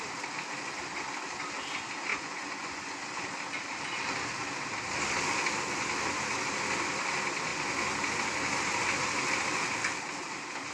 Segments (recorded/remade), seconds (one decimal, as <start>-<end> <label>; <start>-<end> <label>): 0.0-2.1 recorded; 2.1-3.0 remade; 3.0-10.7 recorded